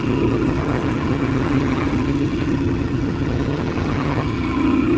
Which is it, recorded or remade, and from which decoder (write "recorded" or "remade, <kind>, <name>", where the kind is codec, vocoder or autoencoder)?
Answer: remade, vocoder, HiFi-GAN